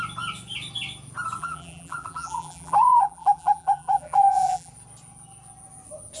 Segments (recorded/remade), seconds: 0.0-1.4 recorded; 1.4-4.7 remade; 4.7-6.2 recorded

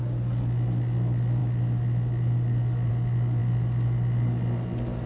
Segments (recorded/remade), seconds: 0.0-5.1 recorded

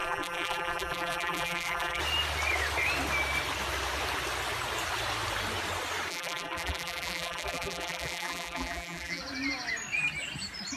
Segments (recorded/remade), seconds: 0.0-2.0 remade; 2.0-6.1 recorded; 6.1-9.2 remade; 9.2-10.8 recorded